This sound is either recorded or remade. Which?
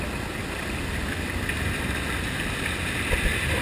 recorded